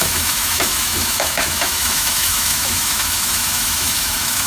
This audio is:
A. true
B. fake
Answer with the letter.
B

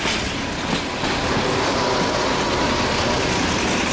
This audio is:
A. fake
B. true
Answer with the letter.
B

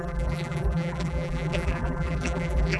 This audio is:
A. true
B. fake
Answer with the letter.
B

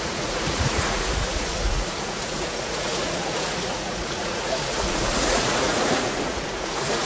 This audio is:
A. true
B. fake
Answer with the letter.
B